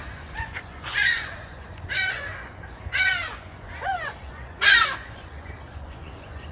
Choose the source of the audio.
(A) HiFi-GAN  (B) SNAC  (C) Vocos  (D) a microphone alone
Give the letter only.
C